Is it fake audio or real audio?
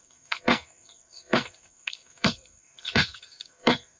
fake